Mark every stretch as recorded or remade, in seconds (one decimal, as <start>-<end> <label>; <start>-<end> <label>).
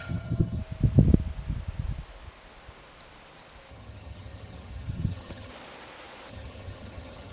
0.0-0.6 remade; 0.6-3.7 recorded; 3.7-5.5 remade; 5.5-6.3 recorded; 6.3-7.3 remade